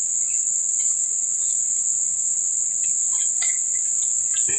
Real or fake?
fake